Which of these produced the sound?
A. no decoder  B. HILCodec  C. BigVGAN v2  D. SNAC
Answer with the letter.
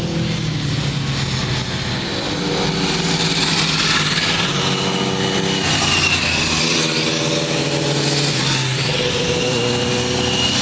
A